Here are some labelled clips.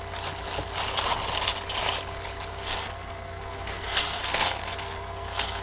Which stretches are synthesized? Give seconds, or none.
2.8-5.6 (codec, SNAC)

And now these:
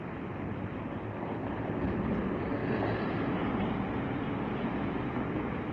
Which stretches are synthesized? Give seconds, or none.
none

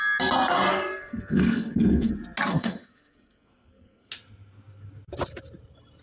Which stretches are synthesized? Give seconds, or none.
0.7-2.1 (codec, SNAC); 2.5-4.1

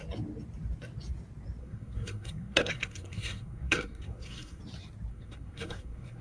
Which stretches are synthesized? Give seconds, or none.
1.6-4.6 (codec, SNAC); 5.1-6.2

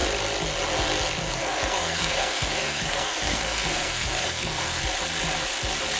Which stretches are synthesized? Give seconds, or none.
1.2-4.8 (codec, SNAC)

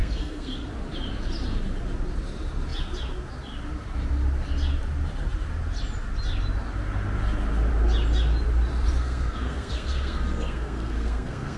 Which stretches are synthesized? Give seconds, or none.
0.0-0.7 (codec, SNAC); 9.0-11.6

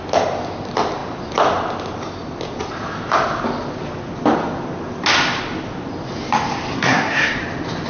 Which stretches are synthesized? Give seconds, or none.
6.7-7.4 (codec, SNAC)